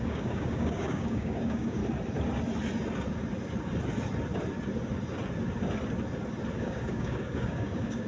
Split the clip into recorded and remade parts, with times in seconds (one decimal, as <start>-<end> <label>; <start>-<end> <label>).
0.0-1.8 remade; 1.8-6.5 recorded; 6.5-8.1 remade